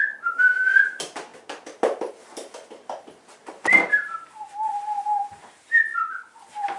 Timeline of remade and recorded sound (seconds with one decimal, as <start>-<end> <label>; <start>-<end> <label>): 0.0-1.3 recorded; 1.3-2.1 remade; 2.1-3.4 recorded; 3.4-5.5 remade; 5.5-6.8 recorded